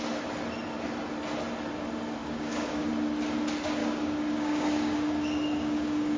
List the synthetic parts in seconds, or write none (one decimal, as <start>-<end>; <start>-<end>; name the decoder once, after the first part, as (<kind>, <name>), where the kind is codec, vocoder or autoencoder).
2.2-2.9 (codec, DAC); 3.8-6.2